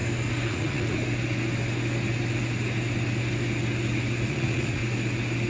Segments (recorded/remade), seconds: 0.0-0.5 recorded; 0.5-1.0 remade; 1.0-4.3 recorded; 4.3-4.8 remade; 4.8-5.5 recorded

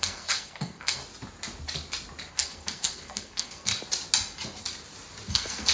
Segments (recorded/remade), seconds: 0.0-1.0 remade; 1.0-2.3 recorded; 2.3-3.7 remade; 3.7-5.3 recorded; 5.3-5.7 remade

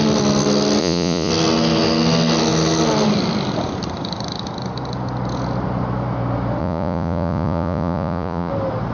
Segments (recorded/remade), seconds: 0.0-0.8 recorded; 0.8-1.3 remade; 1.3-6.6 recorded; 6.6-8.5 remade; 8.5-8.9 recorded

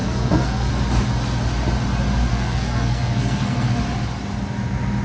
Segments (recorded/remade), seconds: 0.0-0.7 remade; 0.7-2.3 recorded; 2.3-3.8 remade; 3.8-5.0 recorded